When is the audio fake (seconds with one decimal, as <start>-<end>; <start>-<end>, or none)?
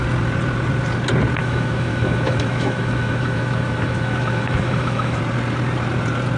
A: 1.4-5.2